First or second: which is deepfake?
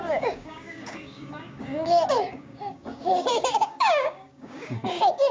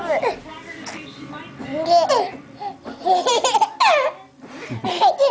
first